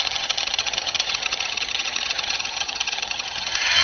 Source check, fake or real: fake